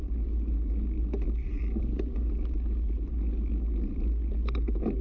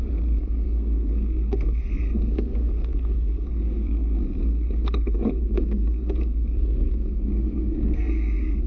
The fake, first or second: second